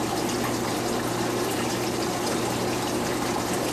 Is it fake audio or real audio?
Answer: real